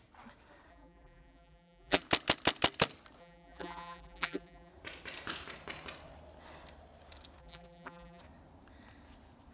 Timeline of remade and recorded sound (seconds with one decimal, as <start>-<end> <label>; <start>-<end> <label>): 0.0-0.7 recorded; 0.7-2.0 remade; 2.0-3.2 recorded; 3.2-4.7 remade; 4.7-7.4 recorded; 7.4-8.2 remade; 8.2-9.5 recorded